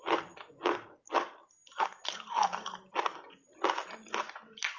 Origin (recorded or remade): recorded